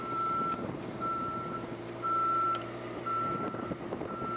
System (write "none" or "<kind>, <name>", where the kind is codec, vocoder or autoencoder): vocoder, BigVGAN v2